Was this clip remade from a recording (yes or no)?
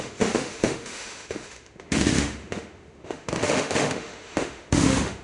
yes